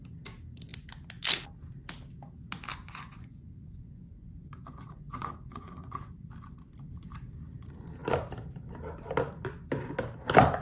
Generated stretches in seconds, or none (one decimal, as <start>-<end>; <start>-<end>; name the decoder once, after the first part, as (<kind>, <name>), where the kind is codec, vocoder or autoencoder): 2.7-6.3 (vocoder, Vocos)